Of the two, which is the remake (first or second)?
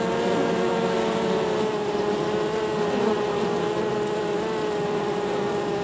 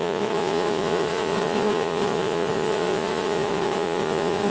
second